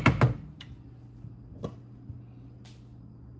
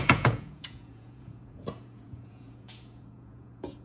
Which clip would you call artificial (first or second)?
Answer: second